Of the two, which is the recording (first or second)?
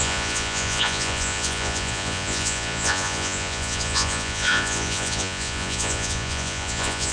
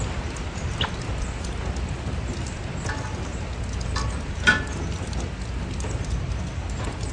second